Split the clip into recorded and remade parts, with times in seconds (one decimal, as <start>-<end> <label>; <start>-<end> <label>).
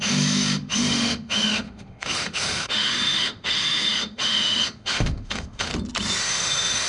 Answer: 0.0-5.7 remade; 5.7-6.2 recorded; 6.2-6.9 remade